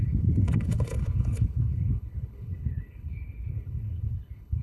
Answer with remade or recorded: remade